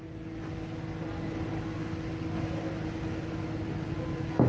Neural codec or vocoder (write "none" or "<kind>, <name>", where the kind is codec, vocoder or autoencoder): none